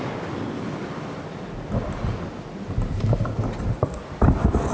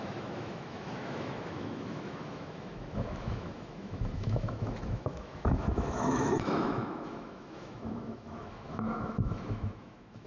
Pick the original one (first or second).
first